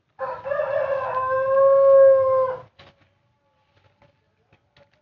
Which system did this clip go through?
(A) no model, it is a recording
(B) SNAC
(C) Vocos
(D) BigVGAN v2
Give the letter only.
A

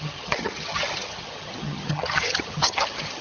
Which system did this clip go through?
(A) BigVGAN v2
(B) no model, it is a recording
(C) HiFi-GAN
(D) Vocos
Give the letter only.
C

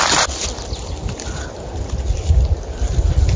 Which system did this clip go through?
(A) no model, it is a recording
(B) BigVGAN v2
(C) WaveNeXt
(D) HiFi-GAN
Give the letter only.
A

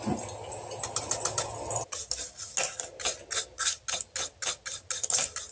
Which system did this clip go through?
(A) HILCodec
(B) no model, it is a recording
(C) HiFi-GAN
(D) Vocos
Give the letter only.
B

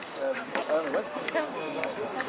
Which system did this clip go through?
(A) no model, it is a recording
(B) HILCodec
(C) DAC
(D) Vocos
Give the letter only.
C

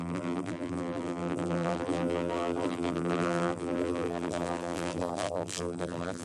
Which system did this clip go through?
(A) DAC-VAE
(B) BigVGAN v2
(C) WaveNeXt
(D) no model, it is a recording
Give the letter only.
B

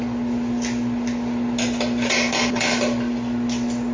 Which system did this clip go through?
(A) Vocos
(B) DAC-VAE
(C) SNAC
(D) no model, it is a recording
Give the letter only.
D